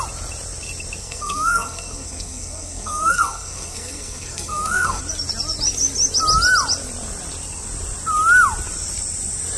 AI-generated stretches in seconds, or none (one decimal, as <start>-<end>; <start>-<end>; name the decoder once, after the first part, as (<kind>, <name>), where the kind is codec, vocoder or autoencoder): 1.0-5.0 (codec, SNAC)